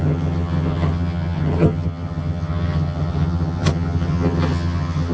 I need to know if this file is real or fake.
fake